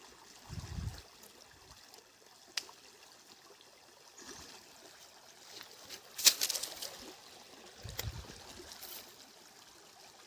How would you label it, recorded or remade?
recorded